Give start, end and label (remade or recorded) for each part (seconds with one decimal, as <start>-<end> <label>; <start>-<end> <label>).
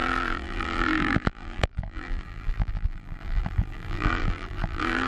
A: 0.0-5.1 remade